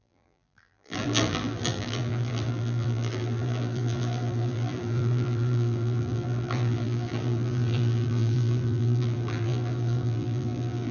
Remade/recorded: remade